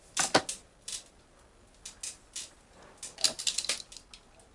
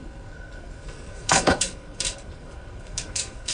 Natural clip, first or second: first